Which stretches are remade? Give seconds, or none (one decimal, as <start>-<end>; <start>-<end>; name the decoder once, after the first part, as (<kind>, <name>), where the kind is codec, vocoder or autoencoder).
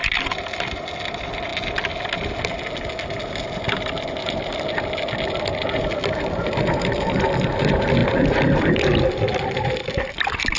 none